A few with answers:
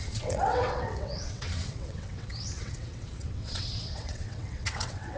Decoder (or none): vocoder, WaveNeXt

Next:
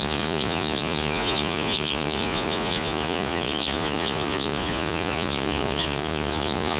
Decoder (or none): vocoder, Vocos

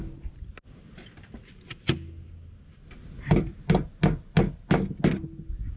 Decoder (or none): none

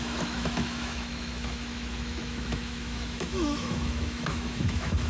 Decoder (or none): autoencoder, DAC-VAE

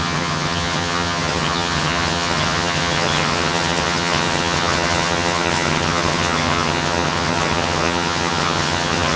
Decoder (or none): vocoder, HiFi-GAN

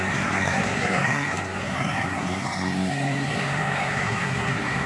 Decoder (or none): codec, SNAC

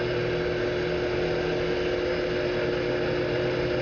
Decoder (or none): none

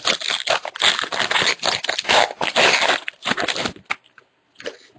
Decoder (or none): none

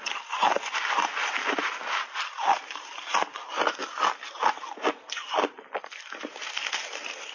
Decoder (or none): none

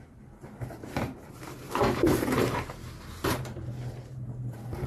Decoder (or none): vocoder, BigVGAN v2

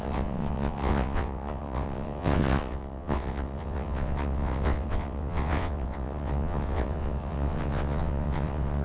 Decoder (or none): vocoder, WaveNeXt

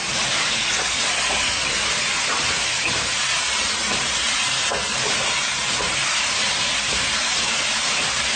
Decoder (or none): vocoder, BigVGAN v2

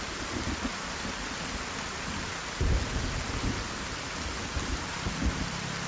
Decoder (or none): none